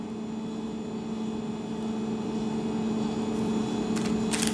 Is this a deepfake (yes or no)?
no